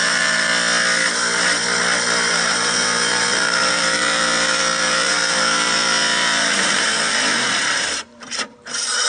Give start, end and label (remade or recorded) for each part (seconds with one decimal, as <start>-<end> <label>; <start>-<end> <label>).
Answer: 0.0-0.5 remade; 0.5-2.3 recorded; 2.3-9.1 remade